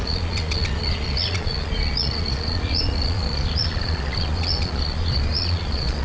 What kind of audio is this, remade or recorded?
remade